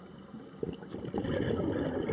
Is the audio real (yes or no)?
yes